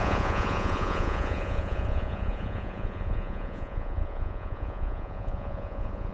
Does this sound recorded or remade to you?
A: remade